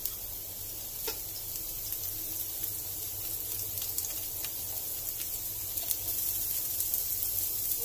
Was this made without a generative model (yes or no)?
yes